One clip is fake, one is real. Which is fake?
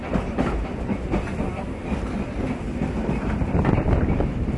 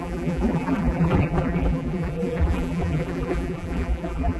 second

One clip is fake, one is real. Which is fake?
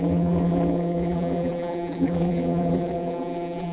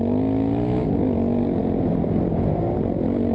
first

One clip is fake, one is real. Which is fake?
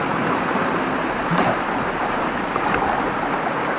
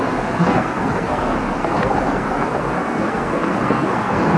second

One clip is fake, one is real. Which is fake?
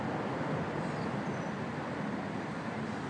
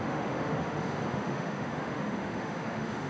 second